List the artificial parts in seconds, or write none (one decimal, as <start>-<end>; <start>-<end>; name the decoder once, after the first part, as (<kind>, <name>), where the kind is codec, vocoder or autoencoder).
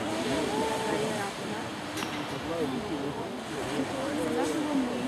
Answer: none